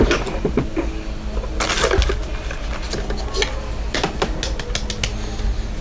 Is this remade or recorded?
recorded